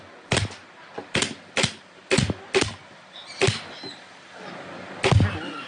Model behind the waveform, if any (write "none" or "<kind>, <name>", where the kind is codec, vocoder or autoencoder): none